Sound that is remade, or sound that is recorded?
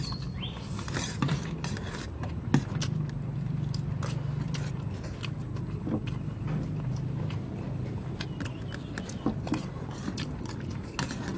recorded